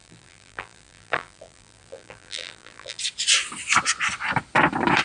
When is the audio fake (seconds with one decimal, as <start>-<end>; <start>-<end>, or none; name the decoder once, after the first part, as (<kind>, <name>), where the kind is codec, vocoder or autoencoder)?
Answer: 0.0-3.0 (vocoder, BigVGAN v2)